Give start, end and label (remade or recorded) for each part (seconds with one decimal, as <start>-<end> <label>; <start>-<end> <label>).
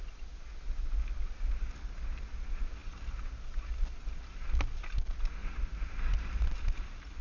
0.0-7.2 recorded